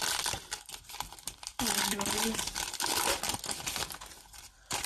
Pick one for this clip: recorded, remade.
remade